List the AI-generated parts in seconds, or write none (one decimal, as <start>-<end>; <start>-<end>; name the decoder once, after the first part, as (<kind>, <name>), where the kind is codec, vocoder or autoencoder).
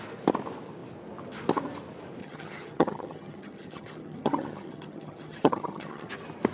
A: 2.2-6.1 (vocoder, HiFi-GAN)